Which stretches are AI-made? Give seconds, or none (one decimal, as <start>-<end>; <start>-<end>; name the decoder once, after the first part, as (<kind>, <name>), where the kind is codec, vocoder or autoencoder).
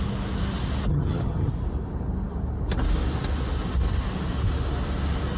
0.9-1.5 (vocoder, HiFi-GAN)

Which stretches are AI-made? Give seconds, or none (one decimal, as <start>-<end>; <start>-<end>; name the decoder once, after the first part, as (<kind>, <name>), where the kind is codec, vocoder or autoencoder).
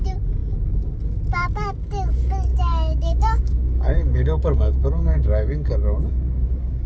2.5-6.9 (codec, DAC)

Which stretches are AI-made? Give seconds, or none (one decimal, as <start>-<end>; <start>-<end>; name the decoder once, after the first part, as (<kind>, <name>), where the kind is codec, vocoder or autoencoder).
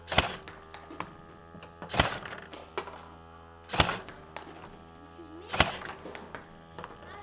none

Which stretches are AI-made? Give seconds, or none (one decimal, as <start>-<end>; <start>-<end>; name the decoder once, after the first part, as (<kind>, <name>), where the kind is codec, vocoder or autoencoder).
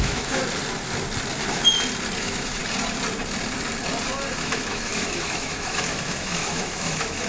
0.0-0.4 (autoencoder, DAC-VAE); 2.2-2.6; 4.4-7.3